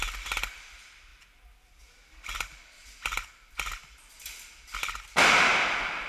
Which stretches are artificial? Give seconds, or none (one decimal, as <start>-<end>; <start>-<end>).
none